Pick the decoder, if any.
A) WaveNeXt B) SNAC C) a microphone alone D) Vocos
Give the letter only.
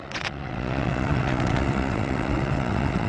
A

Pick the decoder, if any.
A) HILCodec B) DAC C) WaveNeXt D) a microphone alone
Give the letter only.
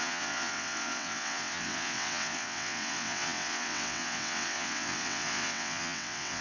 C